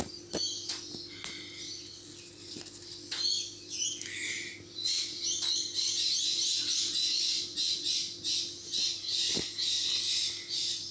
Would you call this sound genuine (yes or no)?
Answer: yes